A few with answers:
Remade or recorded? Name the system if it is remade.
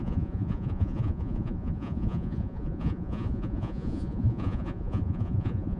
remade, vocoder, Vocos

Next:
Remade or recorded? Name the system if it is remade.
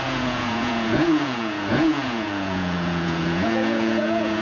remade, vocoder, Vocos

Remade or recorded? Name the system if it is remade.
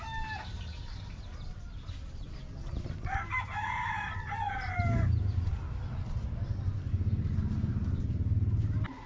recorded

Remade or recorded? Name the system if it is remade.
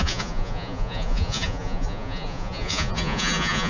remade, vocoder, Vocos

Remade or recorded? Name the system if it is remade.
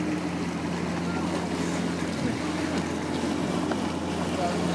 recorded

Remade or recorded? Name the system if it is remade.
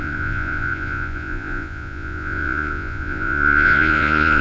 remade, vocoder, Vocos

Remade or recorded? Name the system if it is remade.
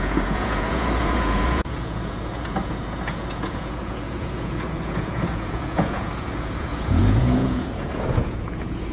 remade, vocoder, Vocos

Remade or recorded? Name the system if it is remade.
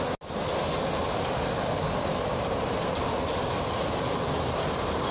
recorded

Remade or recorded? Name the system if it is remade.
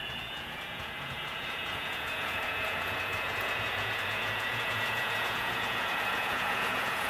remade, vocoder, Vocos